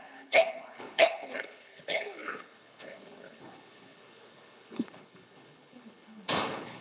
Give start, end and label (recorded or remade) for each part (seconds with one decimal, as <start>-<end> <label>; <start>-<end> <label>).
0.0-6.8 remade